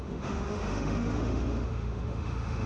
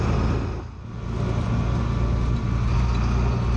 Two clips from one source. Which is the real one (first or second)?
second